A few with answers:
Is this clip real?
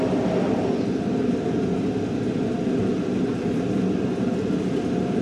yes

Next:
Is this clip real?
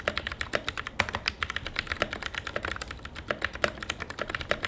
yes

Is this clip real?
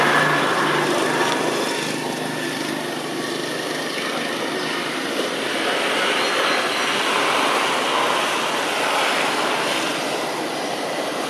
yes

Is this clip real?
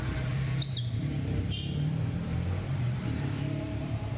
no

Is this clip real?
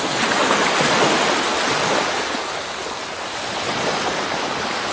yes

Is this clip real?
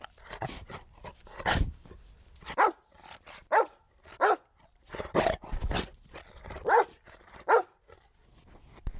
yes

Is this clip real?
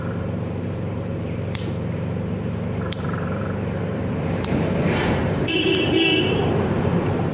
no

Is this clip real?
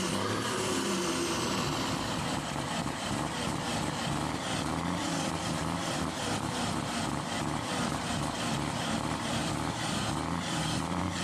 no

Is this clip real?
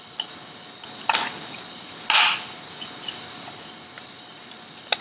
yes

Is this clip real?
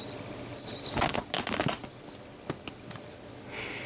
yes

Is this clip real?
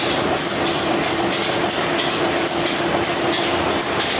yes